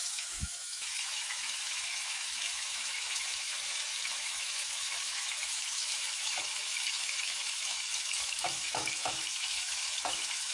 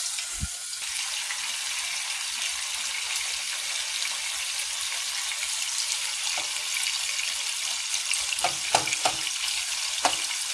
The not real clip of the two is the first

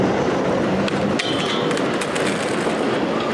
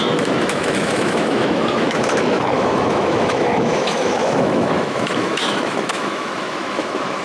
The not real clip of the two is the second